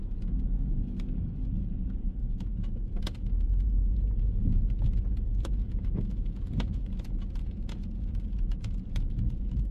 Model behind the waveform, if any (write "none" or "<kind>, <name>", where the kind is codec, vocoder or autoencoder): vocoder, Vocos